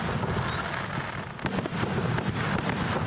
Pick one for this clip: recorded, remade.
recorded